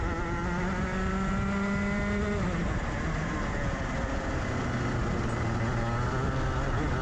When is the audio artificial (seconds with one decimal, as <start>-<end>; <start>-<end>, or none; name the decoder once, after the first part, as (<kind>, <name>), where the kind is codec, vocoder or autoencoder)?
none